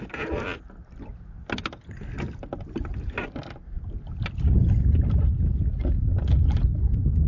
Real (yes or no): yes